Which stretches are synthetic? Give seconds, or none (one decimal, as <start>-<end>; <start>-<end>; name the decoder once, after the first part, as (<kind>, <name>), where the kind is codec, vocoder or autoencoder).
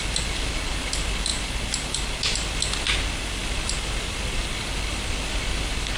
none